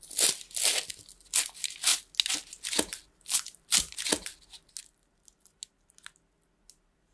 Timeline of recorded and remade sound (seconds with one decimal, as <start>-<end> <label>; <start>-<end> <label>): 0.0-7.1 recorded